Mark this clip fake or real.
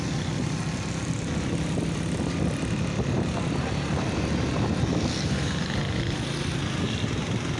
real